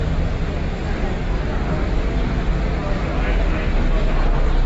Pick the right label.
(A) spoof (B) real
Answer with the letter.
B